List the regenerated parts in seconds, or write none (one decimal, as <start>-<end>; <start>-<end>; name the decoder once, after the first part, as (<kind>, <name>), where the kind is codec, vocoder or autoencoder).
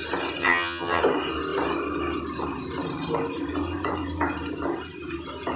0.4-1.0 (vocoder, HiFi-GAN)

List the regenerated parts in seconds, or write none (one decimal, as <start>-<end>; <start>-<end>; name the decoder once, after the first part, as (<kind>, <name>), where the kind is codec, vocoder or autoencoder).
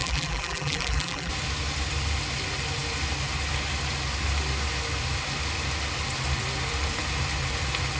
0.0-1.3 (vocoder, BigVGAN v2)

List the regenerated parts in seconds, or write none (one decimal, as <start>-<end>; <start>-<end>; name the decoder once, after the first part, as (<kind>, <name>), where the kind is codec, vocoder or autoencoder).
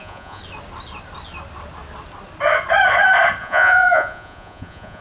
0.0-0.4 (vocoder, Vocos); 3.4-5.0